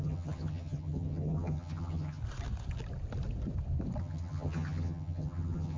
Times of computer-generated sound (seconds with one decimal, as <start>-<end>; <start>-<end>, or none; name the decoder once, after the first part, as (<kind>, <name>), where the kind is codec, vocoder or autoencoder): 0.0-2.2 (vocoder, HiFi-GAN); 4.0-5.8